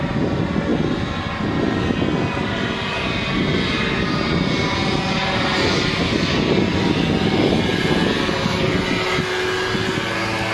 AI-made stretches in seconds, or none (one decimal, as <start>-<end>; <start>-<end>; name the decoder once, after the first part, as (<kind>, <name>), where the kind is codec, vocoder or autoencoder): none